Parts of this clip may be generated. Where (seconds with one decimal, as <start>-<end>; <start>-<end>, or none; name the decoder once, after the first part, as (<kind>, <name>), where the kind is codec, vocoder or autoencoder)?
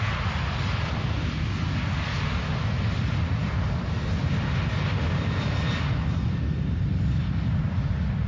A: none